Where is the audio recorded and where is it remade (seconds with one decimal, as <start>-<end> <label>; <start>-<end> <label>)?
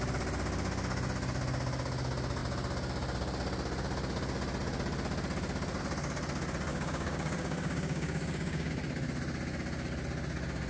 0.0-6.7 recorded; 6.7-8.7 remade; 8.7-10.7 recorded